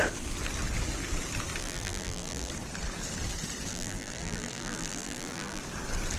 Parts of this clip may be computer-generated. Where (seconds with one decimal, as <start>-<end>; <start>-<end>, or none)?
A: 1.6-2.5; 3.7-5.6